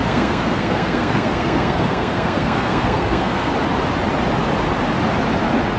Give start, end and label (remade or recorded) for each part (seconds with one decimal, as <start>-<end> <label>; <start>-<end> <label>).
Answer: 0.0-3.5 remade; 3.5-5.8 recorded